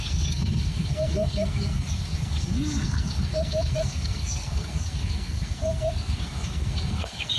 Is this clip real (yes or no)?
no